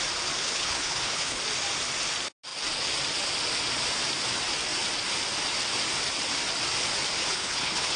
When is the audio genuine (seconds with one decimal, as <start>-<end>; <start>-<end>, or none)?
0.0-0.4; 1.4-7.3

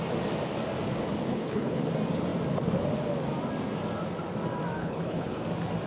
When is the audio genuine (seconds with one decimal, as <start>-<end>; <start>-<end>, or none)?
0.0-1.3; 1.8-4.8; 5.4-5.9